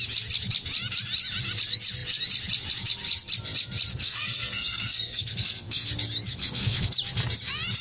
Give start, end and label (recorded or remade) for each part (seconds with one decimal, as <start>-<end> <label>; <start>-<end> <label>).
0.0-3.9 recorded; 3.9-5.9 remade; 5.9-6.4 recorded; 6.4-6.9 remade; 6.9-7.8 recorded